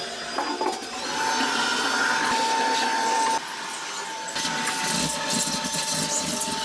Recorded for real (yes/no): yes